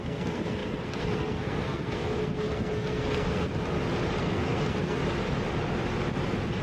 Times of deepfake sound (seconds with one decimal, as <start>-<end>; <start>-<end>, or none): 0.0-3.5; 4.2-5.0